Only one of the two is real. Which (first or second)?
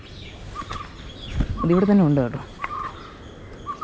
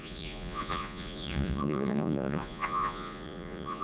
first